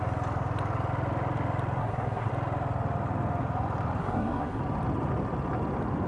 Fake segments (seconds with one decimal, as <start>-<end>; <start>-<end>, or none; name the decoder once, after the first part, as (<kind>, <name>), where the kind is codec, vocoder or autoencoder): 1.8-2.3 (codec, SNAC); 4.0-4.6